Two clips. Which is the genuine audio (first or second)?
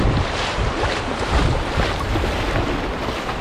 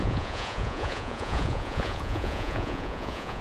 first